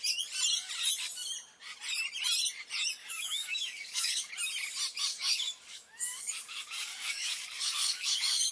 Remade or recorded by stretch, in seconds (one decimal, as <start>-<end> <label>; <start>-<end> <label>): 0.0-3.0 recorded; 3.0-4.3 remade; 4.3-5.1 recorded; 5.1-8.5 remade